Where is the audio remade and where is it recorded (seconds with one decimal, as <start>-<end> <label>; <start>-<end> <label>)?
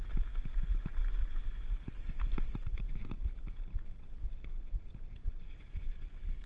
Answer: 0.0-5.2 recorded; 5.2-6.5 remade